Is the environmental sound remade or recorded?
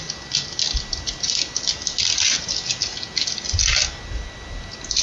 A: recorded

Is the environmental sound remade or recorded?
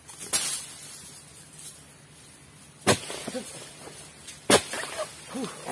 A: recorded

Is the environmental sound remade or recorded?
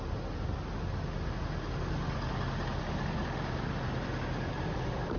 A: recorded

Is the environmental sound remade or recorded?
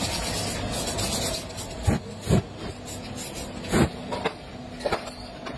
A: recorded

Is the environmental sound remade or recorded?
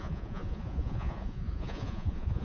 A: remade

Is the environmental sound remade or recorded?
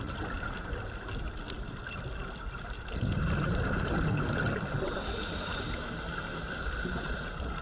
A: recorded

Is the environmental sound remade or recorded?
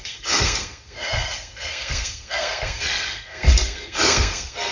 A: remade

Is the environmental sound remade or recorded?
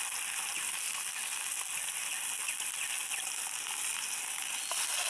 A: recorded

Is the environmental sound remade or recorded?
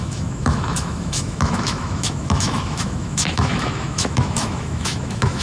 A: remade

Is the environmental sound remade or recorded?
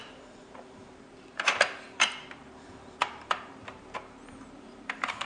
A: remade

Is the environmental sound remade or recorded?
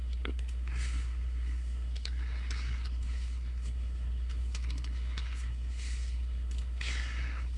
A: remade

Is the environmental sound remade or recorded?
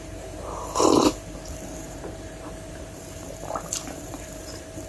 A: remade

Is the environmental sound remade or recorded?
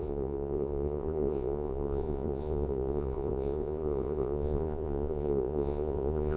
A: remade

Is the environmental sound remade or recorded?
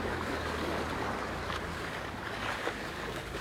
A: remade